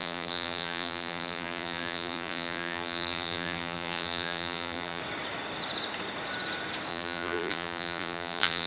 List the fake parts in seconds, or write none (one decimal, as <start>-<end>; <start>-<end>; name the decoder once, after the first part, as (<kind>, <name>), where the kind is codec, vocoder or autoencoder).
0.0-5.0 (vocoder, BigVGAN v2); 6.9-8.7